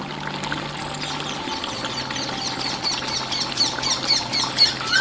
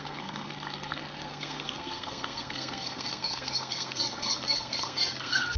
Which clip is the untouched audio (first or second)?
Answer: first